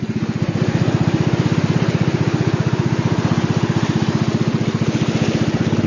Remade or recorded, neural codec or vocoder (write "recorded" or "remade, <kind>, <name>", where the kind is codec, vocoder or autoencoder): recorded